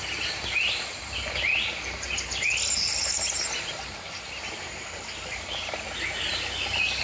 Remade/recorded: remade